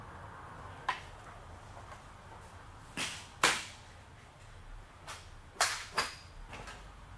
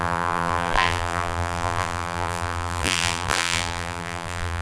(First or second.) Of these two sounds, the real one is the first